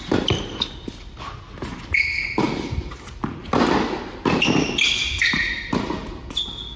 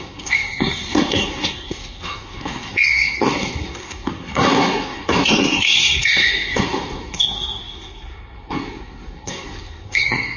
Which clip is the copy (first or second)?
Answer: second